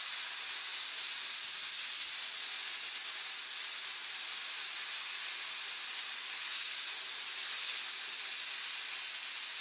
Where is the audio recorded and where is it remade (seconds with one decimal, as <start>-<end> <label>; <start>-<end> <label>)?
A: 0.0-9.6 recorded